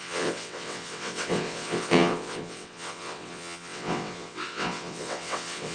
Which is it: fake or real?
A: fake